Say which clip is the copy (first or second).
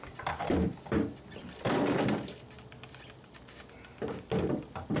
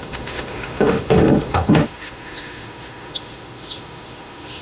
second